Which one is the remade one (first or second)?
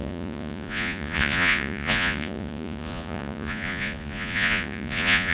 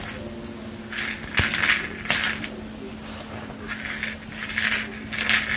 first